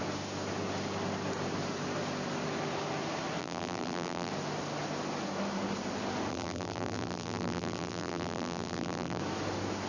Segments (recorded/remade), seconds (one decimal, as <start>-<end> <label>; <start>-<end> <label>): 0.0-3.4 recorded; 3.4-4.3 remade; 4.3-6.3 recorded; 6.3-9.2 remade; 9.2-9.9 recorded